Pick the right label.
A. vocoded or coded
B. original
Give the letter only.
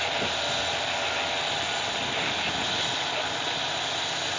B